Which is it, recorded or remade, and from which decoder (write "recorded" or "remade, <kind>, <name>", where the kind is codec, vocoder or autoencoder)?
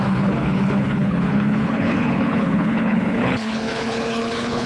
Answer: remade, codec, HILCodec